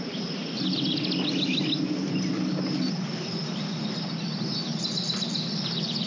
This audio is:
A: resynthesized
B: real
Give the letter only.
B